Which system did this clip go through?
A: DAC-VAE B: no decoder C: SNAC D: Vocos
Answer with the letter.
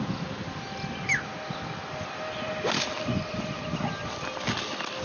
B